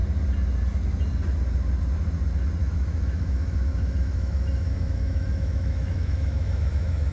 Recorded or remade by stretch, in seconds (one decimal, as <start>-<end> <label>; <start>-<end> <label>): 0.0-2.6 recorded; 2.6-7.1 remade